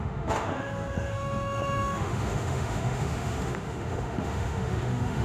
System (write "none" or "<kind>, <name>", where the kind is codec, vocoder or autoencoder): autoencoder, DAC-VAE